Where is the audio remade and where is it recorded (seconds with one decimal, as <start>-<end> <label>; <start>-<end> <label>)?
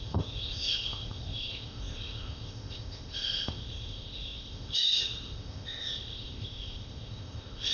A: 0.0-7.7 remade